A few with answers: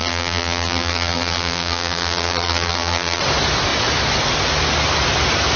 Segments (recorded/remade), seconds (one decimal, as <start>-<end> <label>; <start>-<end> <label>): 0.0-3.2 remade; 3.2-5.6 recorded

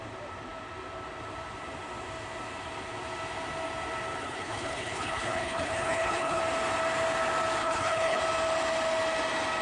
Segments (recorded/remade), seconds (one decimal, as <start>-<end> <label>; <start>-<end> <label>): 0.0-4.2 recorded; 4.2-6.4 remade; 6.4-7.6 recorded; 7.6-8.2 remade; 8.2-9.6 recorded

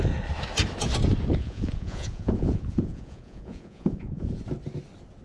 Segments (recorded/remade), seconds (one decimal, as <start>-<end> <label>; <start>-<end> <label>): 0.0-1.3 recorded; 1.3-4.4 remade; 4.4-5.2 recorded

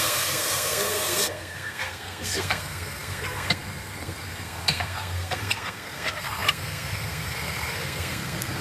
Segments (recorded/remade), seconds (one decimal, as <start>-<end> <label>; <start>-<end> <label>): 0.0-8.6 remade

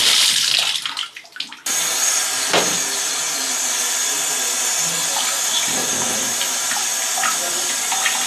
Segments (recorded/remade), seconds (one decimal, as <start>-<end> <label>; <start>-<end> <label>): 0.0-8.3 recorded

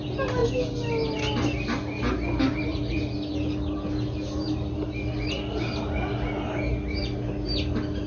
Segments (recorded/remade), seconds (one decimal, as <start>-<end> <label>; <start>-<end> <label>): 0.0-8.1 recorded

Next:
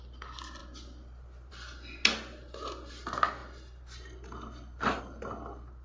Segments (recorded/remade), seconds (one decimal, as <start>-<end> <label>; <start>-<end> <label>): 0.0-5.8 recorded

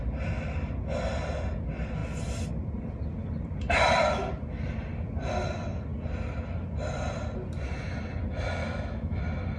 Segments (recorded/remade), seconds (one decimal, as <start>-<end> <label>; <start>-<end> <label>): 0.0-8.6 recorded; 8.6-9.2 remade; 9.2-9.6 recorded